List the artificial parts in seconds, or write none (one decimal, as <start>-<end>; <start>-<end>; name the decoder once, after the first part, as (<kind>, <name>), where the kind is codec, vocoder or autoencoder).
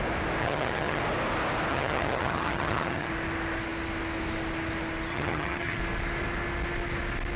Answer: 0.4-1.0 (vocoder, HiFi-GAN); 1.7-3.1; 5.1-5.8